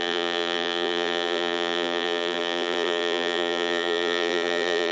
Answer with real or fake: fake